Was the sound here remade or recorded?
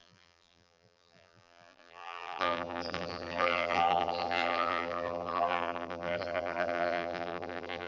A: remade